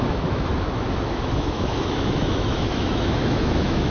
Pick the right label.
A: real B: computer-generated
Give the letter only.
B